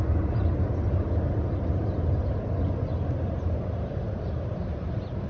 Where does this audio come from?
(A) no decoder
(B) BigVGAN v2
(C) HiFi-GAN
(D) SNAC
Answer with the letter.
A